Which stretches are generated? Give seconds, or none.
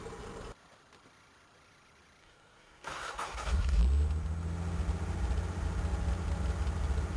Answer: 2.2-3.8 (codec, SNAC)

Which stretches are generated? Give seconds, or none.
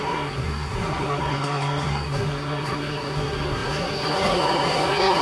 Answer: 0.0-5.2 (codec, SNAC)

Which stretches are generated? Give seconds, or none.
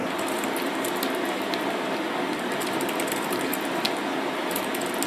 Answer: none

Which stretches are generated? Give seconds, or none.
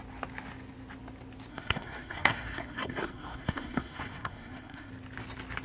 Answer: 1.5-4.9 (codec, SNAC)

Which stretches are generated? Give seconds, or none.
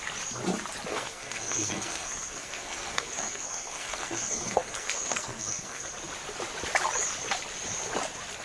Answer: 0.9-5.9 (codec, SNAC)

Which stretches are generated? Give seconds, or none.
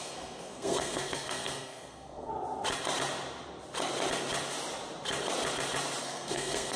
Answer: 0.0-2.3 (codec, SNAC); 6.0-6.8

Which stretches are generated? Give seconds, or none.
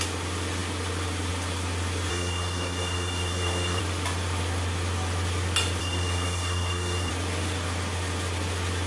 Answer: 2.1-3.8 (codec, SNAC); 5.8-7.1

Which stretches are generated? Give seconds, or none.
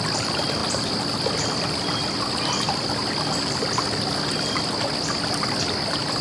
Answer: none